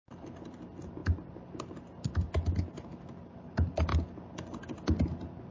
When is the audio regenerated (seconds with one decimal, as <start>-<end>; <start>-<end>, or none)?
none

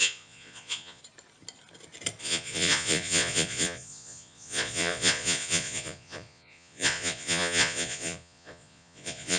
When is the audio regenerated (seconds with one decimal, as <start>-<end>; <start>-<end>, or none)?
0.0-1.0; 2.2-9.4

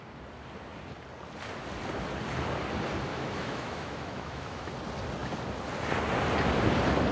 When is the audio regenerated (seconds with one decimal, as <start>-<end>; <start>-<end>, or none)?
3.1-4.7